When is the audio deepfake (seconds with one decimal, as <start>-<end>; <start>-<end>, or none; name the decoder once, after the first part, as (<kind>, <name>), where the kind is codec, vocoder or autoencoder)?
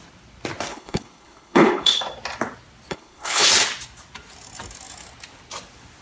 0.7-2.0 (codec, HILCodec); 2.9-3.5